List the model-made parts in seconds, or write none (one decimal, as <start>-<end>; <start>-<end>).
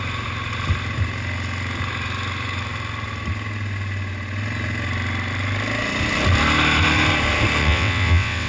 7.6-8.5